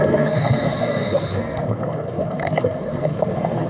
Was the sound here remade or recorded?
remade